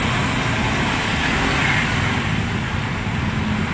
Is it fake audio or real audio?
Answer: real